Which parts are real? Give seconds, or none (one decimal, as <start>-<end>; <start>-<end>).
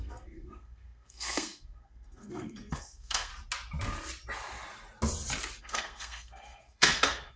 3.3-5.6